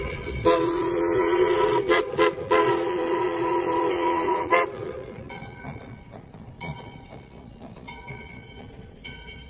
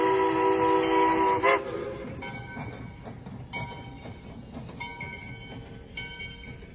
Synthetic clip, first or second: first